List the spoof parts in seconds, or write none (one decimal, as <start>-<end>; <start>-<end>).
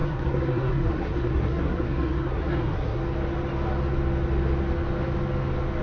0.0-3.0